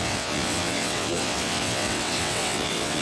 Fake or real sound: fake